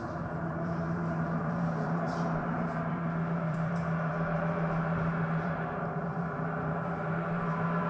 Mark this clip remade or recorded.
remade